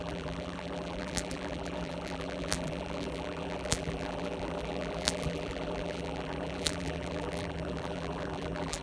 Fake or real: fake